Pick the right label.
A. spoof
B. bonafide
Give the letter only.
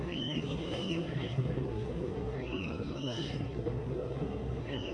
A